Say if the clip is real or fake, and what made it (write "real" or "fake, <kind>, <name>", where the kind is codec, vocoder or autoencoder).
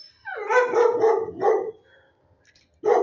real